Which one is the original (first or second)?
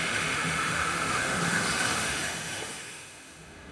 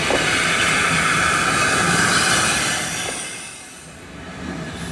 second